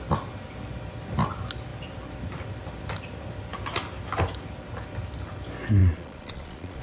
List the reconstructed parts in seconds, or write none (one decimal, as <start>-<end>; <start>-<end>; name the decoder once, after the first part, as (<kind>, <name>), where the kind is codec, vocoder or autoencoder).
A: 5.8-6.8 (vocoder, Vocos)